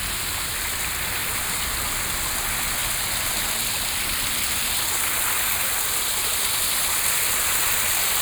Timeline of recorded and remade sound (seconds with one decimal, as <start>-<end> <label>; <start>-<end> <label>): 0.0-1.2 recorded; 1.2-2.2 remade; 2.2-6.3 recorded; 6.3-6.8 remade; 6.8-8.2 recorded